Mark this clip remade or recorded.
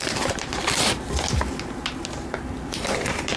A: remade